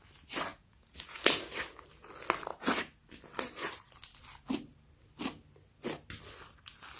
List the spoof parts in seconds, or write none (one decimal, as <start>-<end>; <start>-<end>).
0.5-1.2